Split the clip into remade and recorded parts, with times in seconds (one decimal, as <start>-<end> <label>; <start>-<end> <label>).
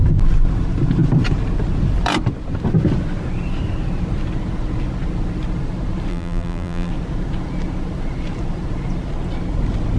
0.0-6.1 recorded; 6.1-6.9 remade; 6.9-10.0 recorded